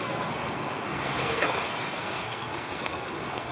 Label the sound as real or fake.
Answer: fake